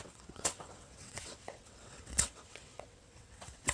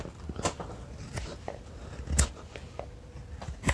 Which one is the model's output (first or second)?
first